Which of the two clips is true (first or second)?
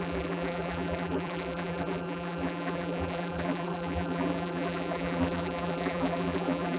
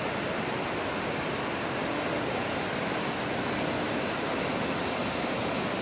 second